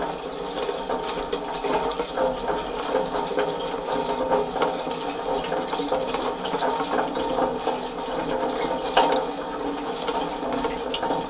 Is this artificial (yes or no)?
no